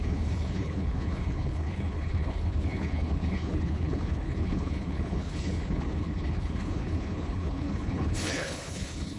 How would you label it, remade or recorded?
remade